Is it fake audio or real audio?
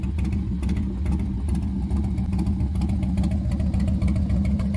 real